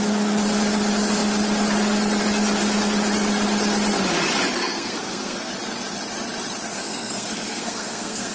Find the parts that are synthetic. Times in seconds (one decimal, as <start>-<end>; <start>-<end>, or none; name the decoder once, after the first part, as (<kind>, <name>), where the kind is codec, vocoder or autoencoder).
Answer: 4.6-5.5 (codec, SNAC); 6.7-8.3